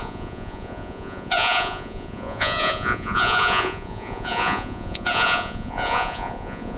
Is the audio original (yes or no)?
no